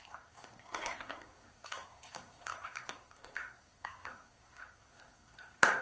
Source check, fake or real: fake